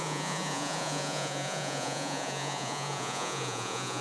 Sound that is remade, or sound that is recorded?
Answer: remade